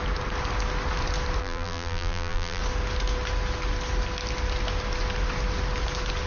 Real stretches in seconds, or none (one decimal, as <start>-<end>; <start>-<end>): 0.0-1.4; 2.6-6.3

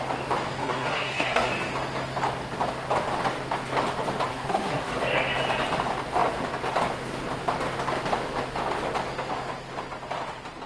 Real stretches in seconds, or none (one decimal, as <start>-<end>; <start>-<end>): 0.0-0.6; 1.5-4.3; 5.0-10.7

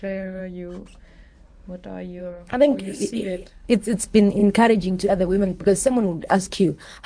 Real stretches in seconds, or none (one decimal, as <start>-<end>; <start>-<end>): 0.4-2.2